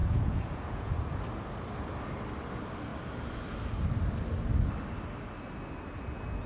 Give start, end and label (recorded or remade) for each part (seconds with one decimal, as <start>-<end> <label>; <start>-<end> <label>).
0.0-0.9 remade; 0.9-6.5 recorded

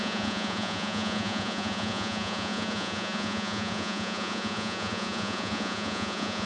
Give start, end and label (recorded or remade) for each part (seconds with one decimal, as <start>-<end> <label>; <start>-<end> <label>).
0.0-6.5 remade

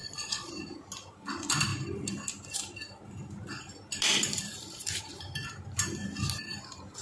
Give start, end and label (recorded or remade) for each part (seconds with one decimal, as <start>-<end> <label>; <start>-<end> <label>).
0.0-0.5 remade; 0.5-7.0 recorded

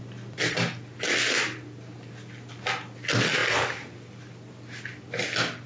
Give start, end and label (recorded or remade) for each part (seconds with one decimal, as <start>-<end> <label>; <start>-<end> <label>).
0.0-5.7 recorded

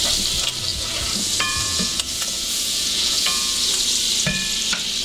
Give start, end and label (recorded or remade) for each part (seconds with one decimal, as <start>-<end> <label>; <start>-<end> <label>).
0.0-0.7 recorded; 0.7-3.7 remade; 3.7-5.0 recorded

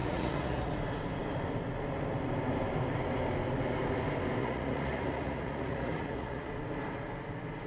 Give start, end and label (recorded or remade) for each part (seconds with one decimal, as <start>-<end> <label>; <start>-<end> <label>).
0.0-0.7 remade; 0.7-4.4 recorded; 4.4-6.5 remade; 6.5-7.7 recorded

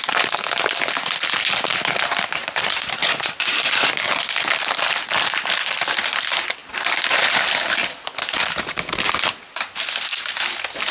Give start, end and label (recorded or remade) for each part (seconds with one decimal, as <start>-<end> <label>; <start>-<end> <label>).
0.0-2.4 recorded; 2.4-3.3 remade; 3.3-10.9 recorded